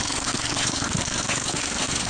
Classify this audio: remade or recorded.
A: remade